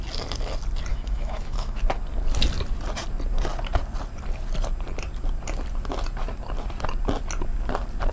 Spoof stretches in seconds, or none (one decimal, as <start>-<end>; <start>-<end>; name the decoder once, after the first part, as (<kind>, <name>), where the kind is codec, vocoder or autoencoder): 0.9-1.8 (autoencoder, DAC-VAE)